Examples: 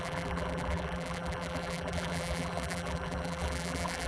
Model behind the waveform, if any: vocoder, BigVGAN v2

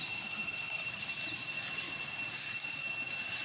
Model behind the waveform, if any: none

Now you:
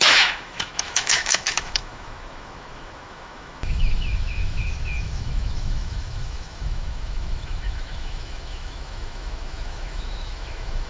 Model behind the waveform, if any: autoencoder, DAC-VAE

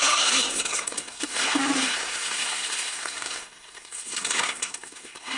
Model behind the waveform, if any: codec, SNAC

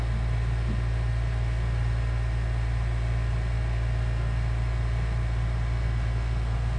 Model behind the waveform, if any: none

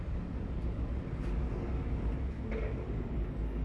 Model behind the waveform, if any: codec, DAC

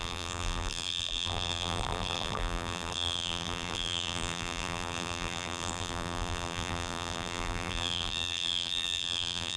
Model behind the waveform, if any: vocoder, BigVGAN v2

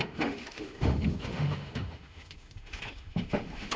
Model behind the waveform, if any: autoencoder, DAC-VAE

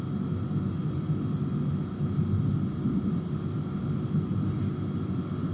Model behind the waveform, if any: none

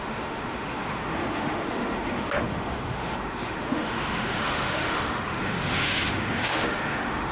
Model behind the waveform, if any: autoencoder, DAC-VAE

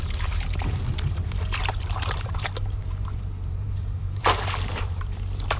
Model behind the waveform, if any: vocoder, BigVGAN v2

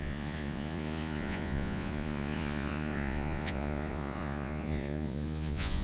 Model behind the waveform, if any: vocoder, Vocos